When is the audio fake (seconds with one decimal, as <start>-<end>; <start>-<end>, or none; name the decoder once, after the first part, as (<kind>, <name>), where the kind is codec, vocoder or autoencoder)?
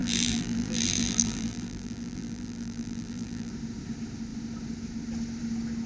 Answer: 0.0-3.5 (vocoder, BigVGAN v2)